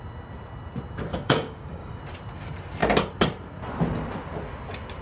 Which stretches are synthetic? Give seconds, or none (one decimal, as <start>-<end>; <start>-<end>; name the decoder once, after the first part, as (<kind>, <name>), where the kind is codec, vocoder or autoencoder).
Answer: 1.1-2.0 (codec, DAC)